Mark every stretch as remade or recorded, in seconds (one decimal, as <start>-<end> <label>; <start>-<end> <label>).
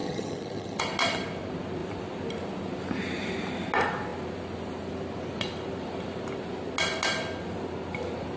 0.0-0.8 remade; 0.8-8.4 recorded